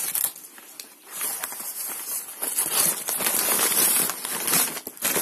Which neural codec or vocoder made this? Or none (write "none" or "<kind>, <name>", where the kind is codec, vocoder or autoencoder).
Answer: none